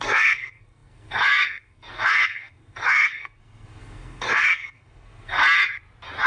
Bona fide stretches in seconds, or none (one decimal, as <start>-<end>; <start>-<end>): 5.4-6.3